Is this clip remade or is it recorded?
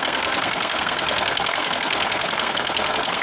remade